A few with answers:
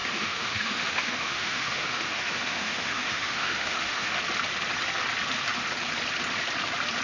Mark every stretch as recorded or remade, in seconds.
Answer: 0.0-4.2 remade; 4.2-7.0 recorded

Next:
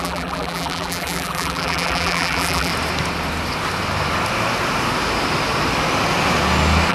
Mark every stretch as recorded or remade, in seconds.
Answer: 0.0-2.7 remade; 2.7-6.9 recorded

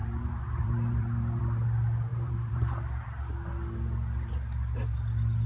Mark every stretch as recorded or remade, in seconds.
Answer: 0.0-1.4 remade; 1.4-2.1 recorded; 2.1-2.7 remade; 2.7-5.5 recorded

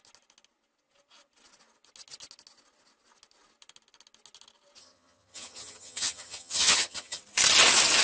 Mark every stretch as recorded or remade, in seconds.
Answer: 0.0-4.8 recorded; 4.8-7.2 remade; 7.2-8.0 recorded

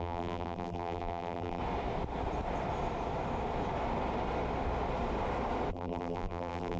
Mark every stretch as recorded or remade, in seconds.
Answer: 0.0-1.6 remade; 1.6-5.7 recorded; 5.7-6.8 remade